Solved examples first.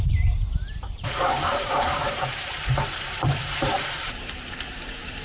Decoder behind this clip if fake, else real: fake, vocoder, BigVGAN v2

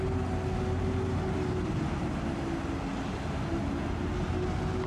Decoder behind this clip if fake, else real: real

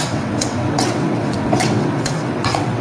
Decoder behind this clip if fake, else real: fake, vocoder, WaveNeXt